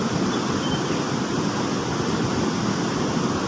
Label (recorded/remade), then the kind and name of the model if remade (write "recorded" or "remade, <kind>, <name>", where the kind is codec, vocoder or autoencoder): recorded